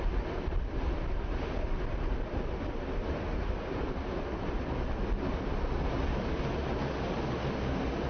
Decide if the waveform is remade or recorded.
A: recorded